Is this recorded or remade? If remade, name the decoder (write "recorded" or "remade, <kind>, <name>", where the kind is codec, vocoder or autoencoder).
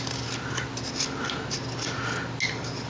recorded